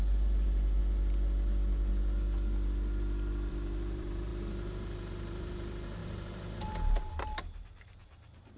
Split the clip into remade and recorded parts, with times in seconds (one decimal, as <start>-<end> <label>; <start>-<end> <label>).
0.0-0.8 remade; 0.8-3.5 recorded; 3.5-8.6 remade